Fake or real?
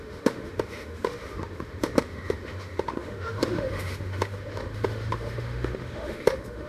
fake